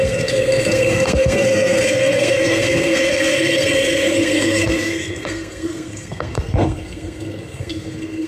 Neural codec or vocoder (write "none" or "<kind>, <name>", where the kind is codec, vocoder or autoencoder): codec, SNAC